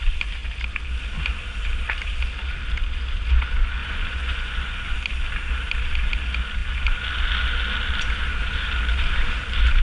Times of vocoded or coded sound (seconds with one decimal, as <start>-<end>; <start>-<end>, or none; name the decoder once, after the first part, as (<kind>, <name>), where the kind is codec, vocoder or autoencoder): 3.8-5.0 (vocoder, Vocos)